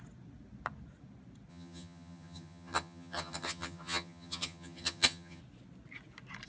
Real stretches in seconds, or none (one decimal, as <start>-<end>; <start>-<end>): 0.0-1.5; 5.4-6.5